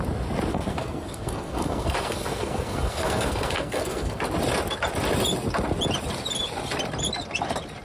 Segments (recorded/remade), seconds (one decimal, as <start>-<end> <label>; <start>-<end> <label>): 0.0-0.5 recorded; 0.5-4.2 remade; 4.2-7.8 recorded